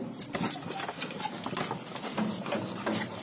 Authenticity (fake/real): real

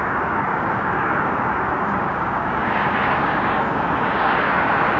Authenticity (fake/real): fake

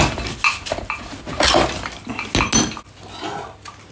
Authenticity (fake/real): real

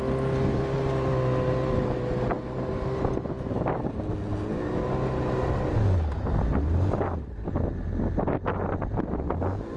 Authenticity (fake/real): real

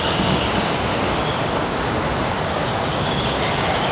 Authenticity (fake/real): fake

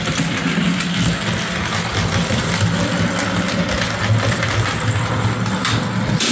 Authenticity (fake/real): real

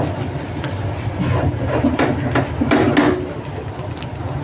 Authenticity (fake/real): real